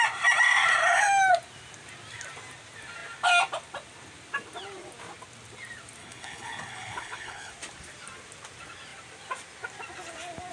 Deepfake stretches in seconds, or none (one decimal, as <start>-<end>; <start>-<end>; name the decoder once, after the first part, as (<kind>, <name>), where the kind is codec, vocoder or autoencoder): 6.0-7.5 (codec, HILCodec)